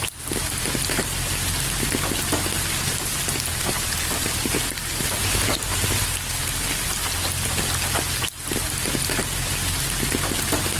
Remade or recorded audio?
recorded